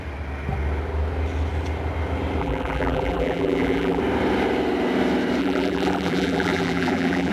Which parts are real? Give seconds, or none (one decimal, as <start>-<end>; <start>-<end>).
0.0-2.4; 4.0-5.4